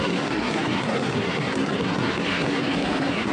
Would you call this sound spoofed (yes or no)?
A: yes